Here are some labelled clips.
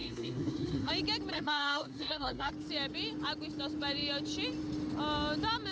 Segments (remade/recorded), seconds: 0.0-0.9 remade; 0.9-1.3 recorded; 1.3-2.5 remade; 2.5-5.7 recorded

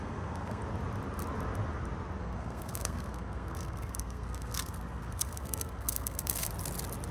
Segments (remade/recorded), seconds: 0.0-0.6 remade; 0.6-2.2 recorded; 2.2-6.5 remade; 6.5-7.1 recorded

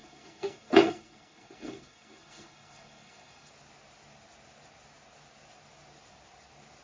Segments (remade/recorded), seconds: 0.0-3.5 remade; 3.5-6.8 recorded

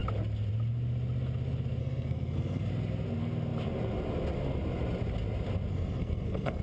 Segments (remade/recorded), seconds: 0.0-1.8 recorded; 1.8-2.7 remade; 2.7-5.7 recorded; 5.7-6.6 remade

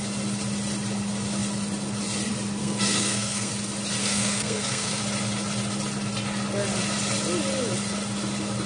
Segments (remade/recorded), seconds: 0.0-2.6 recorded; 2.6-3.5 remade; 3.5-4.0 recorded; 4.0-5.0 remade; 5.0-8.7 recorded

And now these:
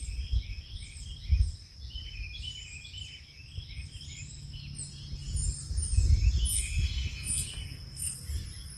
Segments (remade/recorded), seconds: 0.0-6.5 recorded; 6.5-8.1 remade; 8.1-8.8 recorded

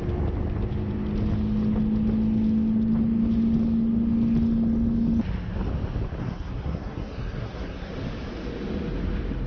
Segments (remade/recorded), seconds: 0.0-6.2 recorded; 6.2-7.9 remade; 7.9-9.5 recorded